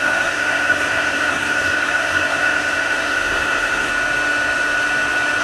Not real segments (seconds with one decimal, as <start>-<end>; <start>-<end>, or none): 0.0-3.9